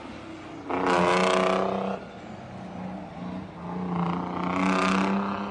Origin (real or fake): real